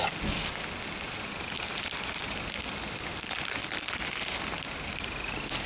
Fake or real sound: real